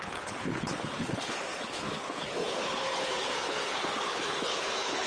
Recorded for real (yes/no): no